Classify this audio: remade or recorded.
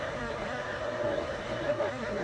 remade